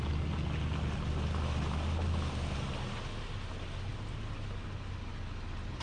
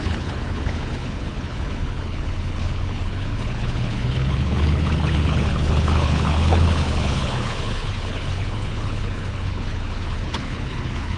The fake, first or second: second